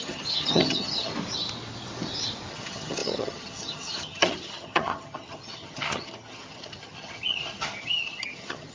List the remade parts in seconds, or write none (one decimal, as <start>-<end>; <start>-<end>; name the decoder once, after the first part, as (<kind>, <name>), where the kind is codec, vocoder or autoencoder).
0.0-1.1 (vocoder, HiFi-GAN); 2.5-8.7